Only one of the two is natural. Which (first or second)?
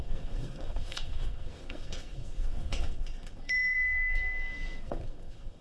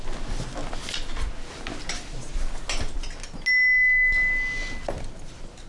second